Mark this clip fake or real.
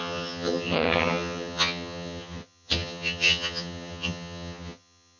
fake